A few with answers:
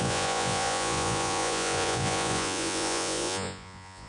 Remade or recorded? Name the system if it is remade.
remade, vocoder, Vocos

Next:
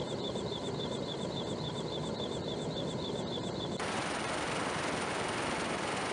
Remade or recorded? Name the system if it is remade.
recorded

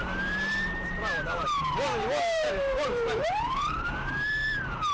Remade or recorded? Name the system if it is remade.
remade, vocoder, BigVGAN v2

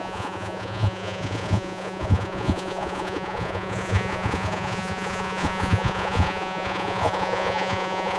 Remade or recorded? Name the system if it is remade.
remade, vocoder, Vocos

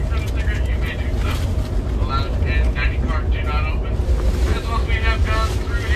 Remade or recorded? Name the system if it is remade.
recorded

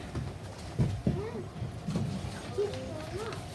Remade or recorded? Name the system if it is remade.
recorded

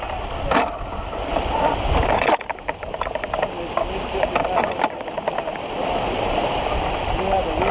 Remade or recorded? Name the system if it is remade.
recorded